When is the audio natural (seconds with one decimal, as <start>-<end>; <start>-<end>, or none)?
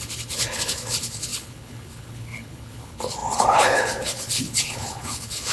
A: none